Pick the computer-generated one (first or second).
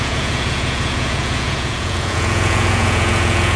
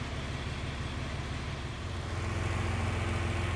first